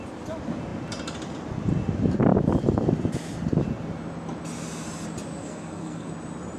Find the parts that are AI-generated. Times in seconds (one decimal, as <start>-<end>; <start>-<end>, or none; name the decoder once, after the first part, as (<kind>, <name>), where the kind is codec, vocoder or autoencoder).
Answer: 5.4-6.1 (codec, SNAC)